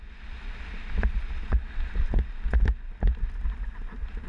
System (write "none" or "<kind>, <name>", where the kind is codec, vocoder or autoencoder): none